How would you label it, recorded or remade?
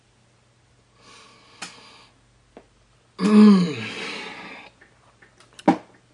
recorded